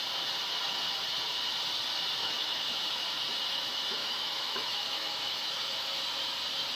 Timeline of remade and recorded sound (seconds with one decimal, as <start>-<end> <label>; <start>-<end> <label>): 0.0-2.2 recorded; 2.2-3.0 remade; 3.0-4.0 recorded; 4.0-6.0 remade; 6.0-6.8 recorded